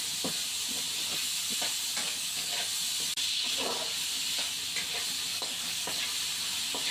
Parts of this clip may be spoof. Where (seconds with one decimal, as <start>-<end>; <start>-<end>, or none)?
2.0-2.7; 5.3-6.0